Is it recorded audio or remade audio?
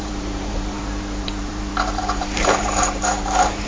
remade